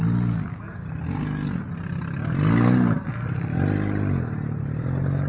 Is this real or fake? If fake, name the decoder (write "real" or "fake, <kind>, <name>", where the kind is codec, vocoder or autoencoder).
real